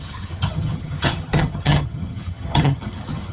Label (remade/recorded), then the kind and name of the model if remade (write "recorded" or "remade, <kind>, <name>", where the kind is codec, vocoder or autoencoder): remade, vocoder, HiFi-GAN